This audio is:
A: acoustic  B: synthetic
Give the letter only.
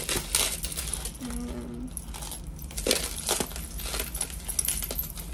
A